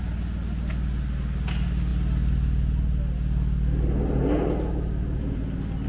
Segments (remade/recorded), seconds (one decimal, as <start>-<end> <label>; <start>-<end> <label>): 0.0-5.9 recorded